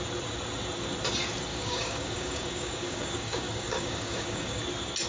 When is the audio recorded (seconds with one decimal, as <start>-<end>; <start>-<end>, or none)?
0.0-1.5; 4.6-5.1